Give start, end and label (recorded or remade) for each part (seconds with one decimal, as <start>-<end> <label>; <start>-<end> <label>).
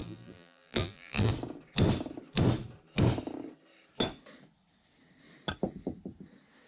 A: 0.0-1.3 remade; 1.3-6.7 recorded